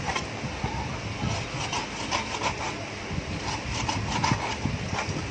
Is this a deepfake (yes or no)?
no